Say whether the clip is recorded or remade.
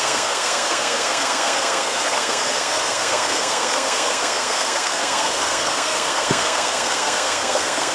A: remade